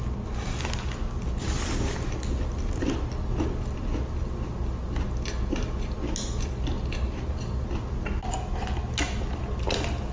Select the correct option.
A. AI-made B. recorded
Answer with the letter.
B